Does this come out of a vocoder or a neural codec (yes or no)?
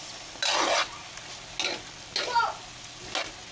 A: no